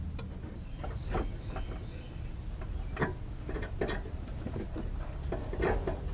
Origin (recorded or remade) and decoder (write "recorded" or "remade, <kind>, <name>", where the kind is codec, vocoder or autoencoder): recorded